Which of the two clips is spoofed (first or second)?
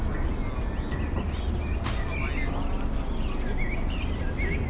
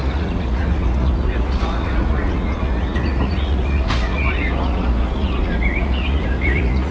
second